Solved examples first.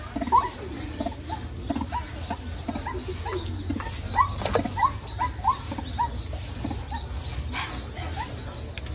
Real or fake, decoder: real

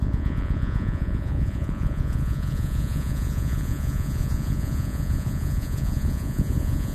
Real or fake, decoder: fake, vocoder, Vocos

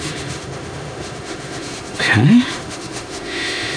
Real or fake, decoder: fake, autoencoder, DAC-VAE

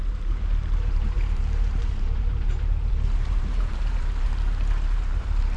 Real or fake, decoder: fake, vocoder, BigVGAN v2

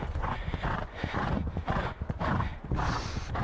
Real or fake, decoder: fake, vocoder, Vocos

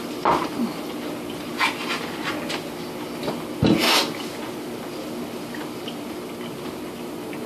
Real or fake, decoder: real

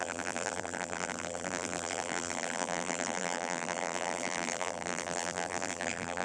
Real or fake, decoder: fake, vocoder, BigVGAN v2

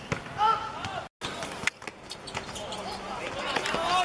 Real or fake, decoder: real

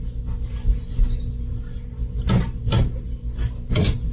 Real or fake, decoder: real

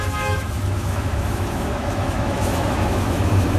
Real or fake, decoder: fake, autoencoder, DAC-VAE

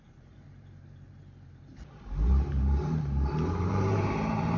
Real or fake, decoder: fake, vocoder, BigVGAN v2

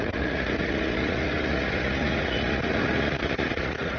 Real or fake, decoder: fake, vocoder, Vocos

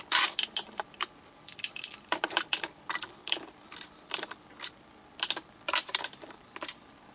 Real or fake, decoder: fake, vocoder, BigVGAN v2